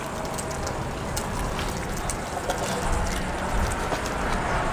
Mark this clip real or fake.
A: real